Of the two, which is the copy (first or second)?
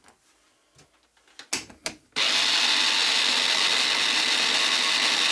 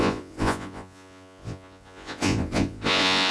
second